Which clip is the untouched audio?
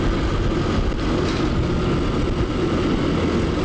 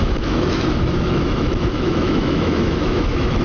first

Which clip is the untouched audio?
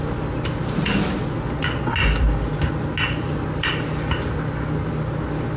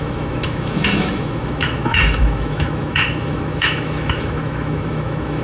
first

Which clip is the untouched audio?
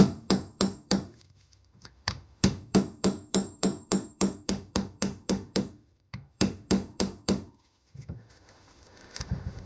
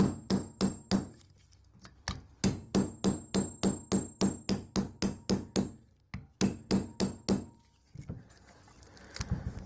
second